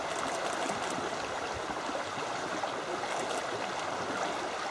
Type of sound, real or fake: real